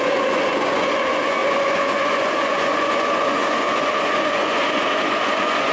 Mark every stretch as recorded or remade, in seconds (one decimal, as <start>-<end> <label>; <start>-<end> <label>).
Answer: 0.0-5.7 remade

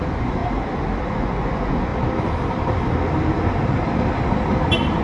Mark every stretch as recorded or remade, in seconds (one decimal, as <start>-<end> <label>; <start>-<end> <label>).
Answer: 0.0-0.4 remade; 0.4-1.1 recorded; 1.1-1.9 remade; 1.9-5.0 recorded

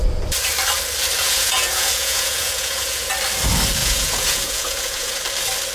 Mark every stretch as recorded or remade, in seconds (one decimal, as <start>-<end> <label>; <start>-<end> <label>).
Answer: 0.0-1.2 recorded; 1.2-3.1 remade; 3.1-3.8 recorded; 3.8-5.2 remade; 5.2-5.7 recorded

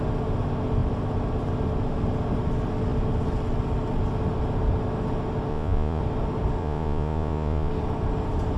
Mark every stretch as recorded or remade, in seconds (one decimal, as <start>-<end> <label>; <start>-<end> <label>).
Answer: 0.0-5.5 recorded; 5.5-6.0 remade; 6.0-6.6 recorded; 6.6-7.7 remade; 7.7-8.6 recorded

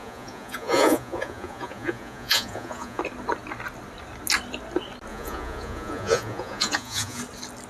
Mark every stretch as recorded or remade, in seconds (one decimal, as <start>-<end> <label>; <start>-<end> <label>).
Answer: 0.0-3.0 remade; 3.0-5.1 recorded; 5.1-7.2 remade; 7.2-7.7 recorded

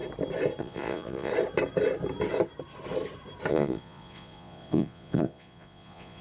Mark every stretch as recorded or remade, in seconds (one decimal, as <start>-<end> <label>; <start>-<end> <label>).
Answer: 0.0-0.6 recorded; 0.6-1.3 remade; 1.3-3.5 recorded; 3.5-6.2 remade

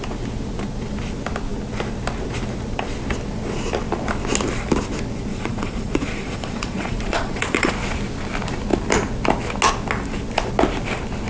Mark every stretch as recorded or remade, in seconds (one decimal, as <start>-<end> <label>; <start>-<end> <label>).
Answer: 0.0-5.3 recorded; 5.3-7.7 remade; 7.7-11.3 recorded

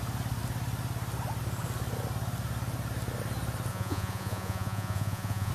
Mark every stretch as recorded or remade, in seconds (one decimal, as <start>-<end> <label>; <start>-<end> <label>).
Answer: 0.0-3.7 recorded; 3.7-5.5 remade